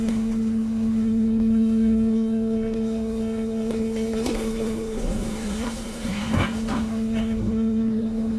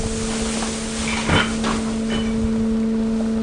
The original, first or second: second